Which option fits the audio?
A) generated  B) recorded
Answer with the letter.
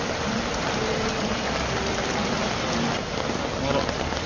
B